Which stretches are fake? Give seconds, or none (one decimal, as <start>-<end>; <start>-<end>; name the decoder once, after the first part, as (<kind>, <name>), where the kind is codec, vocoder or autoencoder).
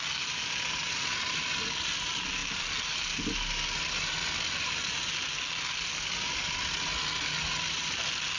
none